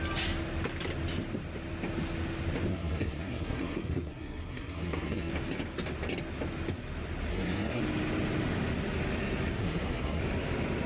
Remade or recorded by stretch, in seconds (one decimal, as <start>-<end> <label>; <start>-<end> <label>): 0.0-2.7 recorded; 2.7-5.3 remade; 5.3-7.3 recorded; 7.3-7.8 remade; 7.8-9.6 recorded; 9.6-10.2 remade; 10.2-10.9 recorded

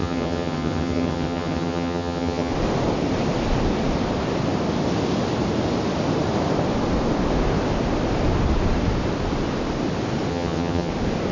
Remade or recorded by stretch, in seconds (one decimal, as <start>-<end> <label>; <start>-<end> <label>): 0.0-2.5 remade; 2.5-10.3 recorded; 10.3-10.9 remade; 10.9-11.3 recorded